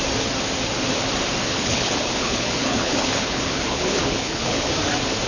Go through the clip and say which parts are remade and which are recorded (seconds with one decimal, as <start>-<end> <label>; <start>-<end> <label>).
0.0-1.5 recorded; 1.5-4.7 remade; 4.7-5.3 recorded